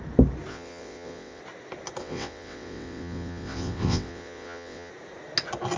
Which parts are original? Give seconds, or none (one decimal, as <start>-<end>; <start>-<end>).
0.0-0.5; 1.4-2.0; 4.9-5.8